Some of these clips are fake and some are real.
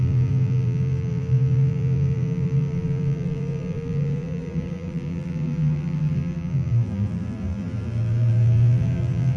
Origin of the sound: fake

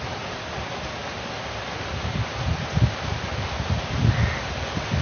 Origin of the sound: real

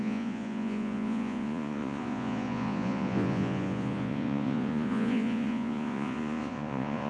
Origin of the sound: fake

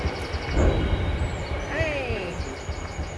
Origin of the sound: real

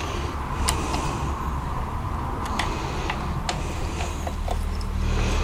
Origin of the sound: real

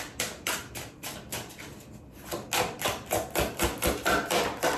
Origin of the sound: real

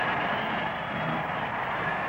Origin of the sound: fake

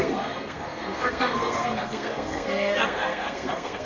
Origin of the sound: fake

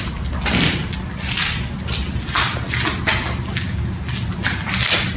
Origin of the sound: real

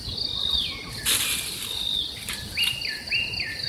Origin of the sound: real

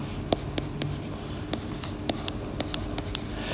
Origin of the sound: real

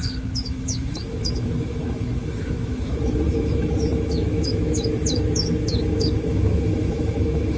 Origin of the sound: fake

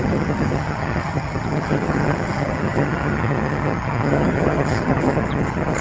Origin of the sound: fake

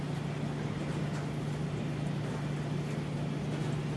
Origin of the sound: real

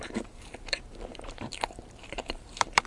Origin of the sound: fake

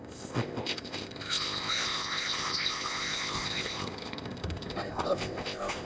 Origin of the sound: fake